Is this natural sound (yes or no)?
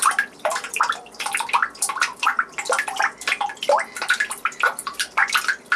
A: no